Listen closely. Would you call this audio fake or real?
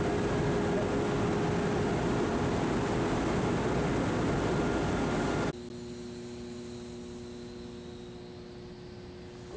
real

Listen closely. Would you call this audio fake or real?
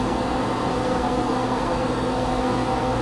fake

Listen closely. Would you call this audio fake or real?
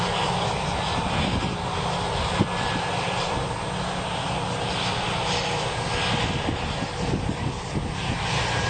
real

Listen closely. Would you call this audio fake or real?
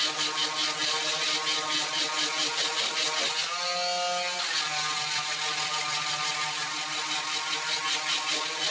real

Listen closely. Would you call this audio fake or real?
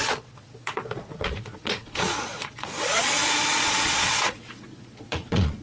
fake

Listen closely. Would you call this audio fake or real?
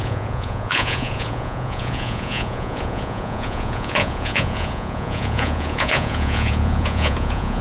fake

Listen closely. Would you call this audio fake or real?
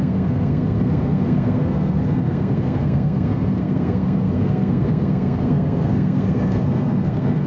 fake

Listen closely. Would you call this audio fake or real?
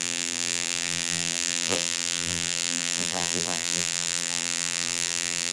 fake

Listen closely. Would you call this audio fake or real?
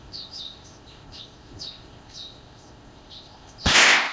fake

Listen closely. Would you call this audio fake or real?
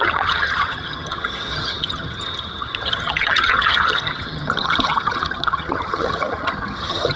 fake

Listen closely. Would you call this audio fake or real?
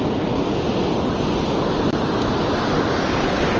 real